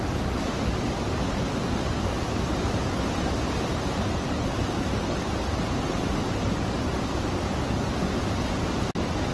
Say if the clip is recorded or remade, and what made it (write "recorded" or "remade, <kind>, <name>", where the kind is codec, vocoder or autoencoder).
recorded